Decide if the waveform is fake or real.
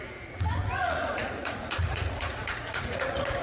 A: fake